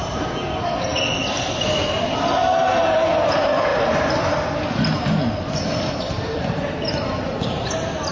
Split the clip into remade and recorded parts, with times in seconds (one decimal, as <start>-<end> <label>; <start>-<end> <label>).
0.0-8.1 remade